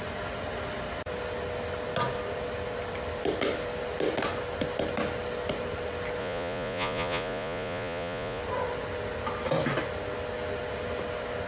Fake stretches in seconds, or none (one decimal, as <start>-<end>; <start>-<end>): 6.2-8.4